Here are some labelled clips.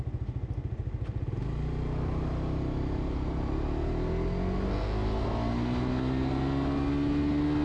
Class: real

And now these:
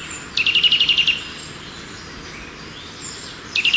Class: real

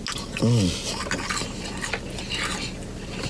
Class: real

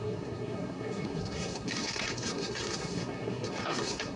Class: fake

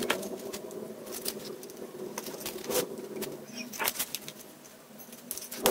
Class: real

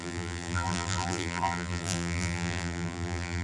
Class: fake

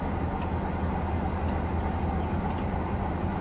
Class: real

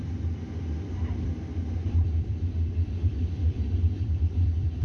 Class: fake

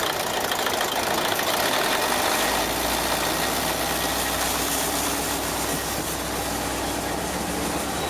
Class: real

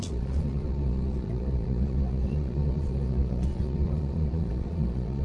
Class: fake